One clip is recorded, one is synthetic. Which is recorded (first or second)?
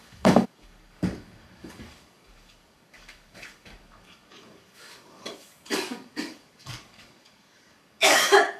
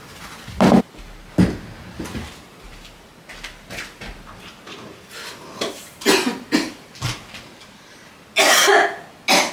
second